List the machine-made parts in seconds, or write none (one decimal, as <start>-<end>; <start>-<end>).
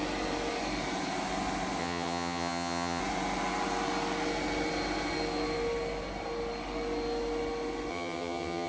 1.8-3.0; 7.9-8.7